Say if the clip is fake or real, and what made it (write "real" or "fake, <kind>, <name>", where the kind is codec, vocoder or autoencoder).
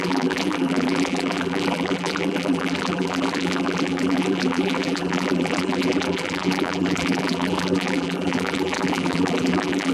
fake, vocoder, BigVGAN v2